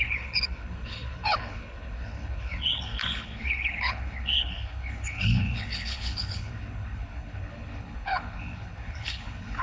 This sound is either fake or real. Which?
fake